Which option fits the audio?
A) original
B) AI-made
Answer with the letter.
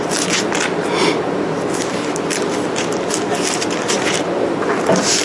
A